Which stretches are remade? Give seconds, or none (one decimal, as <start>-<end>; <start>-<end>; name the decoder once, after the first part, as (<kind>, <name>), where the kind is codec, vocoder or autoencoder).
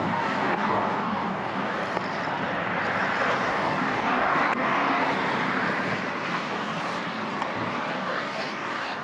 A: 0.0-1.8 (codec, DAC); 3.5-5.0; 6.3-6.7; 7.9-9.0